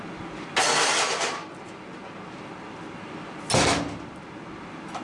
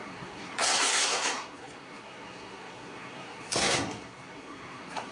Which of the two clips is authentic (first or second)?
first